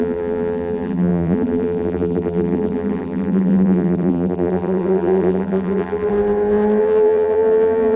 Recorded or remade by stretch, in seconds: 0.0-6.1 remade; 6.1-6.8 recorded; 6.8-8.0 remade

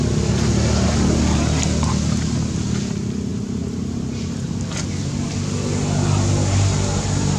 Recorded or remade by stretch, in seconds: 0.0-7.4 recorded

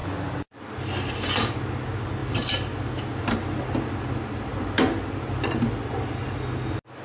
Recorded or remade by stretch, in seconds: 0.0-0.6 remade; 0.6-2.2 recorded; 2.2-5.1 remade; 5.1-7.0 recorded

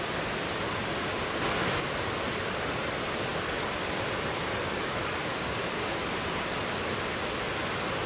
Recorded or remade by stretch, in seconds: 0.0-3.3 recorded; 3.3-6.0 remade; 6.0-8.1 recorded

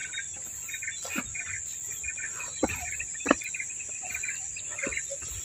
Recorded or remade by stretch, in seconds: 0.0-5.4 recorded